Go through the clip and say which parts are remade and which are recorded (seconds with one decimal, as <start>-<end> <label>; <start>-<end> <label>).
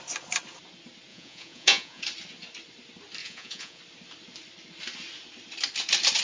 0.0-1.1 recorded; 1.1-2.0 remade; 2.0-3.2 recorded; 3.2-3.8 remade; 3.8-6.2 recorded